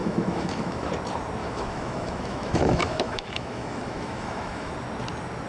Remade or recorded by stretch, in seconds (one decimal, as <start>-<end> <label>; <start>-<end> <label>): 0.0-0.9 remade; 0.9-1.4 recorded; 1.4-4.7 remade; 4.7-5.5 recorded